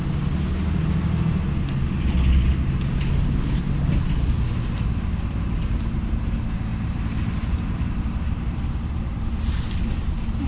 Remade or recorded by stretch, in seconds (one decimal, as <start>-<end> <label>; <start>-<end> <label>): 0.0-6.7 recorded; 6.7-7.9 remade; 7.9-10.5 recorded